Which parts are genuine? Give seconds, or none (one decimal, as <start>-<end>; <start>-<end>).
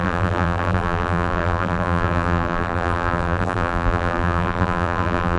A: none